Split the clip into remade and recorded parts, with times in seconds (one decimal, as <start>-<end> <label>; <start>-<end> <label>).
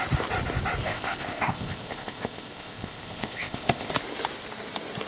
0.0-0.8 recorded; 0.8-3.9 remade; 3.9-5.1 recorded